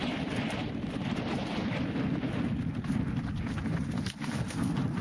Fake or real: real